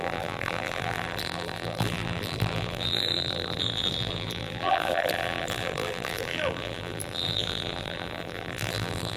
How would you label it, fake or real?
fake